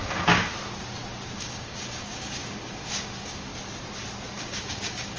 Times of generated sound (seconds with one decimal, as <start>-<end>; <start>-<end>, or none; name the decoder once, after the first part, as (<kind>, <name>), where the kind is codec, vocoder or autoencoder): 0.0-0.5 (codec, DAC); 1.4-3.5; 4.3-5.2